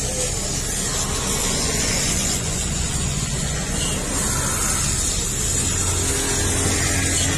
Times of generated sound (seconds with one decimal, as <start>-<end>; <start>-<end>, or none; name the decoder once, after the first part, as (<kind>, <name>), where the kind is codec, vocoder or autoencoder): 1.4-3.8 (vocoder, Vocos)